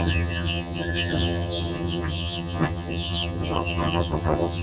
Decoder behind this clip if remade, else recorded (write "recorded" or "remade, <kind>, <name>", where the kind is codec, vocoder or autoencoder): remade, vocoder, HiFi-GAN